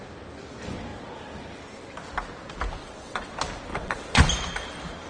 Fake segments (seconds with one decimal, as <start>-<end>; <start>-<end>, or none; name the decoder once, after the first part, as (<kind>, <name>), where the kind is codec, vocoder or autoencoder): 2.8-3.3 (vocoder, WaveNeXt); 3.7-4.3